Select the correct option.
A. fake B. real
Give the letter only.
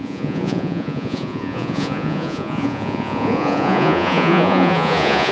A